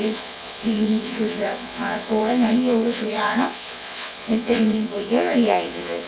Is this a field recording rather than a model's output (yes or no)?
no